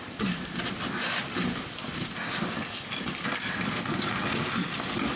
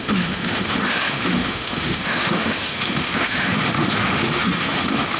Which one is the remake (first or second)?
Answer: second